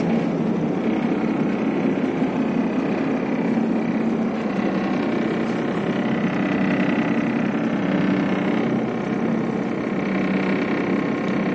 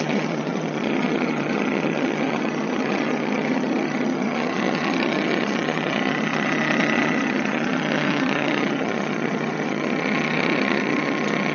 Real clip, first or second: first